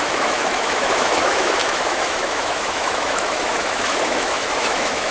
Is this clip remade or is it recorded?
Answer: remade